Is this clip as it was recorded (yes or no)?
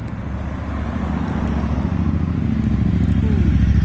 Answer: yes